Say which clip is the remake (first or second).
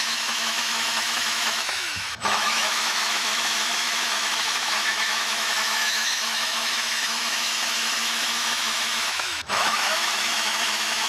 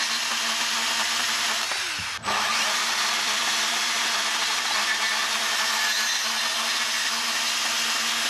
first